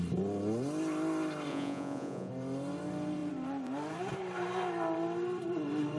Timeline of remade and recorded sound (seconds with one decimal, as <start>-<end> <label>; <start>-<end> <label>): 0.0-1.5 recorded; 1.5-2.3 remade; 2.3-6.0 recorded